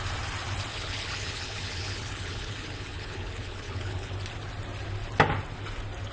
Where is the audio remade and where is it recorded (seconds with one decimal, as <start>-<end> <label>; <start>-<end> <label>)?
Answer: 0.0-0.7 recorded; 0.7-4.1 remade; 4.1-6.1 recorded